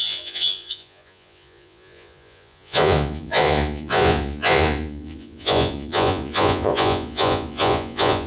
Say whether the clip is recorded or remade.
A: remade